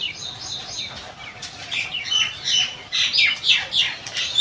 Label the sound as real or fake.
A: real